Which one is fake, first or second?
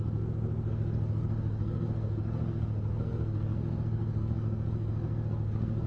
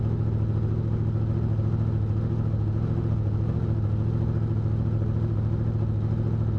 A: first